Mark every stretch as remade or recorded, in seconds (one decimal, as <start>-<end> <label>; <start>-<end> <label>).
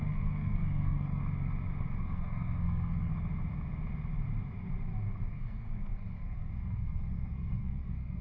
0.0-1.2 remade; 1.2-2.0 recorded; 2.0-3.1 remade; 3.1-5.3 recorded; 5.3-8.2 remade